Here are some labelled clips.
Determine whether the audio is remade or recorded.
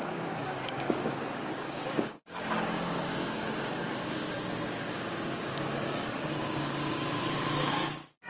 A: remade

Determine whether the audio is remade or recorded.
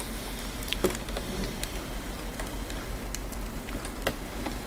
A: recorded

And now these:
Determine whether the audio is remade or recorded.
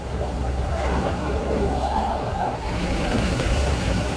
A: remade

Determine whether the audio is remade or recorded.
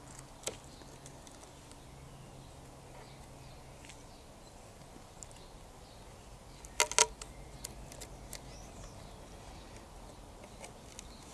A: recorded